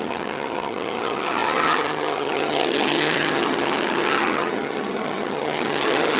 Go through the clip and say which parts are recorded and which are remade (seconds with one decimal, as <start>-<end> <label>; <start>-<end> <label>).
0.0-6.2 remade